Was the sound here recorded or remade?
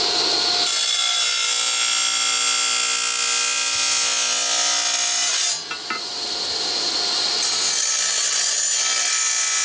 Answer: recorded